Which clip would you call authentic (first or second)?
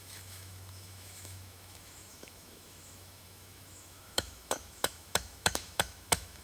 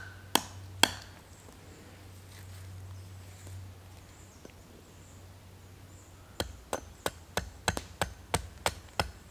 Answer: second